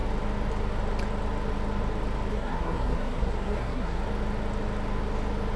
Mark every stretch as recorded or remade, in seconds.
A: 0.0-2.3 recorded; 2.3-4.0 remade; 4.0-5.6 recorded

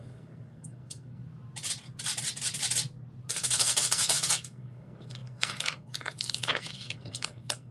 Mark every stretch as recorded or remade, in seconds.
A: 0.0-1.2 remade; 1.2-3.3 recorded; 3.3-7.7 remade

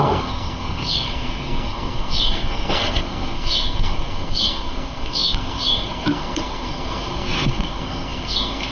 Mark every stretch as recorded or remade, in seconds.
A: 0.0-8.7 remade

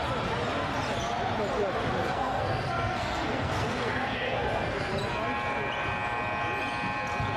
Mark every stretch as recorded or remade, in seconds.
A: 0.0-2.0 recorded; 2.0-5.0 remade; 5.0-7.4 recorded

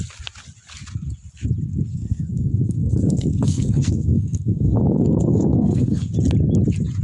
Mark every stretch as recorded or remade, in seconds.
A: 0.0-1.9 recorded; 1.9-6.1 remade; 6.1-7.0 recorded

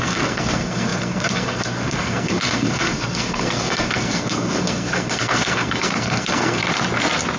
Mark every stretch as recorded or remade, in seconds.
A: 0.0-6.6 remade; 6.6-7.4 recorded